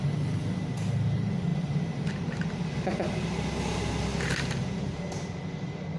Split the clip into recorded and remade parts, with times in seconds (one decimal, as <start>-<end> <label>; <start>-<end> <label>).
0.0-1.5 recorded; 1.5-2.1 remade; 2.1-4.1 recorded; 4.1-5.4 remade; 5.4-6.0 recorded